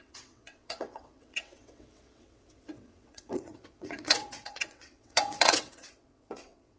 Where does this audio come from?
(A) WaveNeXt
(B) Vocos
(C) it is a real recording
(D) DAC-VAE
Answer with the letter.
A